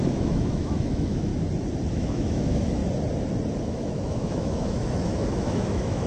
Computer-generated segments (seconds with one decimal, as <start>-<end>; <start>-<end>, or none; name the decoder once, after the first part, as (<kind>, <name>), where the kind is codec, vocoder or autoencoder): 0.0-1.3 (autoencoder, DAC-VAE); 1.9-2.8; 3.6-6.1